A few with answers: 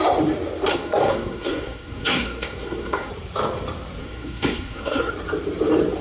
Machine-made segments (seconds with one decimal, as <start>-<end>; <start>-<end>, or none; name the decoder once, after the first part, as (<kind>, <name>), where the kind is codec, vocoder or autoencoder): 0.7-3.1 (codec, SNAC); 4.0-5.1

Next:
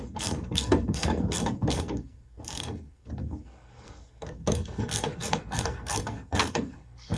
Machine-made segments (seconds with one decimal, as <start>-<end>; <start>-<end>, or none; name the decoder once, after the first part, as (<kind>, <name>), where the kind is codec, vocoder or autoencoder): 0.0-7.2 (codec, SNAC)

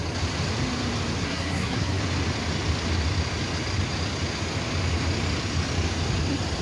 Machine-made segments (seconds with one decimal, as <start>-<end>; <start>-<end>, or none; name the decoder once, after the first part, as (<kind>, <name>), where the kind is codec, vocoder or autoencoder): 1.2-2.0 (codec, SNAC)